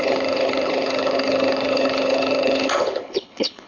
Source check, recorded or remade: remade